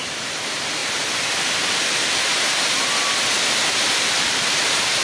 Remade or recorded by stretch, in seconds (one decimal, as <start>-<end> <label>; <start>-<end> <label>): 0.0-0.8 remade; 0.8-2.1 recorded; 2.1-5.0 remade